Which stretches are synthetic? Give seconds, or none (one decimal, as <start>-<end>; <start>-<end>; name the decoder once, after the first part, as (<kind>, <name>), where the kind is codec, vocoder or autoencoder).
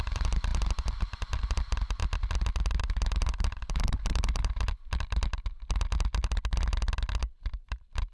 0.0-2.0 (vocoder, BigVGAN v2); 2.7-5.3; 7.2-8.1